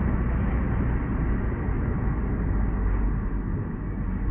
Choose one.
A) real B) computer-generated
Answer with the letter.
A